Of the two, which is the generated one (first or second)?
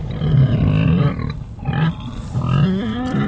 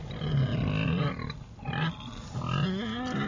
first